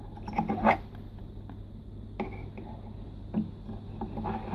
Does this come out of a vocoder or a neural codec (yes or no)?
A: no